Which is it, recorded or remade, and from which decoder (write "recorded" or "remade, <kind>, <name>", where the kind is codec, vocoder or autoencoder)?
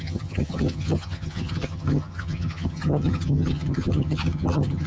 remade, vocoder, HiFi-GAN